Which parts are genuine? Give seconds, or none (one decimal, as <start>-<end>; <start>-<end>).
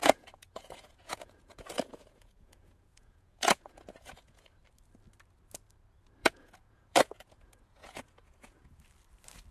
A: 4.5-6.2; 8.8-9.5